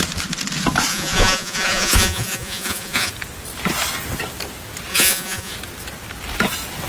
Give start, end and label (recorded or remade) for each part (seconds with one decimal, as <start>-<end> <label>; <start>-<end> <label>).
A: 0.0-0.9 recorded; 0.9-3.1 remade; 3.1-4.9 recorded; 4.9-5.5 remade; 5.5-6.9 recorded